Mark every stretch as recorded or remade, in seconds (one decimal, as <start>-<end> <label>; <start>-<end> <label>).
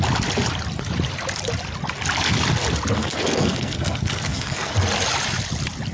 0.0-3.0 recorded; 3.0-4.7 remade; 4.7-5.9 recorded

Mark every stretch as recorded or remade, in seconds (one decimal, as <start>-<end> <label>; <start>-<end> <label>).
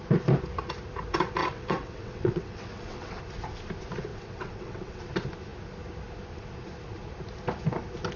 0.0-1.4 recorded; 1.4-3.2 remade; 3.2-4.1 recorded; 4.1-5.0 remade; 5.0-8.2 recorded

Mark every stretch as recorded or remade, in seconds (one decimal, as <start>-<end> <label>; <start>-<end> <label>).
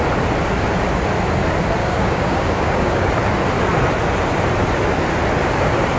0.0-1.8 recorded; 1.8-3.1 remade; 3.1-6.0 recorded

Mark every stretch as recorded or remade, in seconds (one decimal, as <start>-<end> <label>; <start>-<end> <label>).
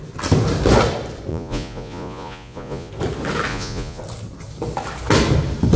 0.0-1.3 recorded; 1.3-2.9 remade; 2.9-3.5 recorded; 3.5-4.0 remade; 4.0-5.8 recorded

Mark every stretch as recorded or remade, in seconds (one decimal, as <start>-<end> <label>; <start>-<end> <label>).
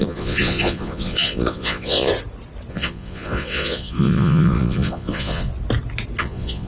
0.0-2.1 remade; 2.1-2.7 recorded; 2.7-5.5 remade; 5.5-6.2 recorded; 6.2-6.7 remade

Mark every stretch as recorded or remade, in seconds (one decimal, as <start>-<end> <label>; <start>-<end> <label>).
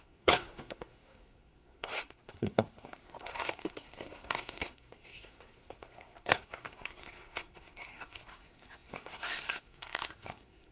0.0-10.7 remade